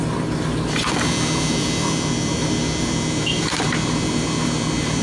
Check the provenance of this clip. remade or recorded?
remade